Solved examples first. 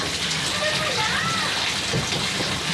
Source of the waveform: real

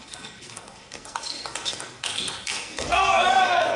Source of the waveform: fake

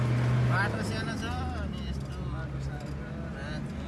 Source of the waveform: real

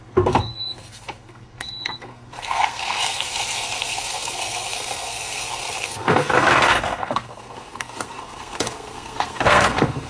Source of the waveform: fake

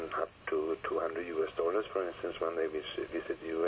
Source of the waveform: real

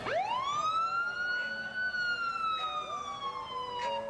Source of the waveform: real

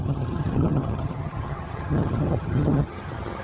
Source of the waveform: fake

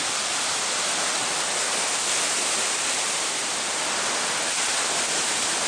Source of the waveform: real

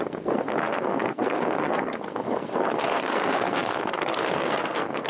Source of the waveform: fake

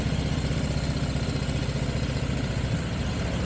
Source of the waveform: real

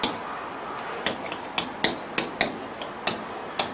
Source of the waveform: real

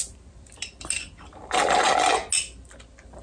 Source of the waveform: real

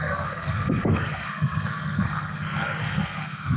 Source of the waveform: fake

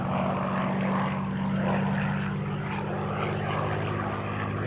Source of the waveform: real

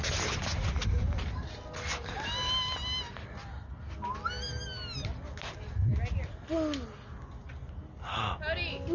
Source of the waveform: real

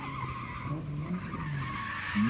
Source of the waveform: real